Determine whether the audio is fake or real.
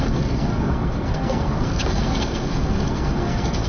fake